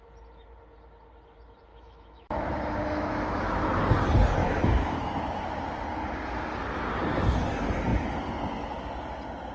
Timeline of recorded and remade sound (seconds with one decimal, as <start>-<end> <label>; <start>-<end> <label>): 0.0-1.7 recorded; 1.7-3.8 remade; 3.8-4.4 recorded; 4.4-5.5 remade; 5.5-9.5 recorded